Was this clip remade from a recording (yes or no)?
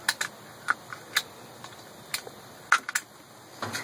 no